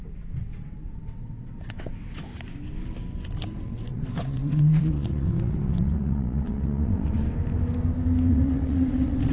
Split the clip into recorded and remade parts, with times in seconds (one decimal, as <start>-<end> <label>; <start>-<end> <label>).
0.0-0.5 recorded; 0.5-2.3 remade; 2.3-3.5 recorded; 3.5-7.2 remade; 7.2-8.3 recorded; 8.3-9.3 remade